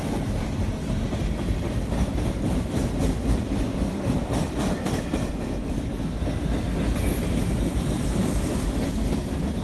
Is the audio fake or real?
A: real